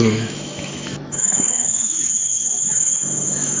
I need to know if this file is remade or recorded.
remade